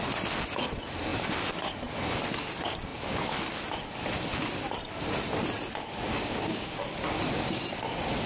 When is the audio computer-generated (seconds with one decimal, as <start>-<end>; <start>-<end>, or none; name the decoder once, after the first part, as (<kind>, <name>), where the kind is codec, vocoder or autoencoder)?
6.1-6.8 (codec, DAC)